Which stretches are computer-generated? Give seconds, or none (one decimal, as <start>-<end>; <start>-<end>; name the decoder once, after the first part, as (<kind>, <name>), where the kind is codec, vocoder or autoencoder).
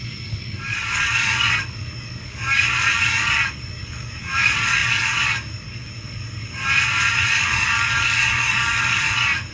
0.0-6.6 (codec, DAC); 7.1-9.5